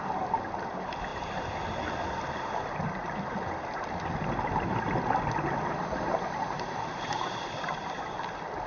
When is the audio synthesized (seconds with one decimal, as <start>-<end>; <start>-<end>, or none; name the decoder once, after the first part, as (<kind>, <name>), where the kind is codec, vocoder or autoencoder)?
0.0-8.7 (vocoder, BigVGAN v2)